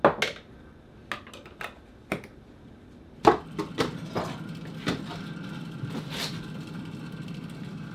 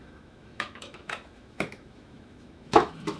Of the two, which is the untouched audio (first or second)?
first